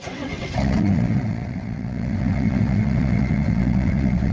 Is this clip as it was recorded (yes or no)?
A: no